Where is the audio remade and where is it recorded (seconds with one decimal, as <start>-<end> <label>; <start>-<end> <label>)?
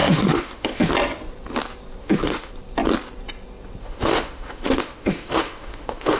0.0-0.9 remade; 0.9-2.0 recorded; 2.0-2.5 remade; 2.5-3.8 recorded; 3.8-6.2 remade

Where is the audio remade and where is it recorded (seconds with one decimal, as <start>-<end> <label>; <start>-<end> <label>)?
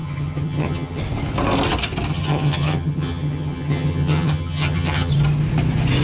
0.0-1.0 remade; 1.0-2.1 recorded; 2.1-5.1 remade; 5.1-6.0 recorded